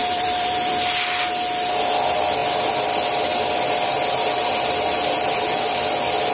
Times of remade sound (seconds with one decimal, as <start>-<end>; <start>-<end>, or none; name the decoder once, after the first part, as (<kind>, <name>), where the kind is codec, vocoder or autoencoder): 0.0-0.7 (vocoder, BigVGAN v2)